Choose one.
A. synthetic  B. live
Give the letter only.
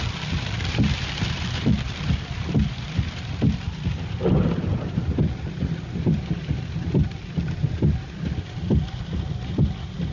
A